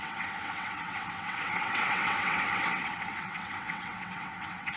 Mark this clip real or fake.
fake